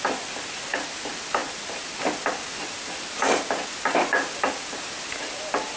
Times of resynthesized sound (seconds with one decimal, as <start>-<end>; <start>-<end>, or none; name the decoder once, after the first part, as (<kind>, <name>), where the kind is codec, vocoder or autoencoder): none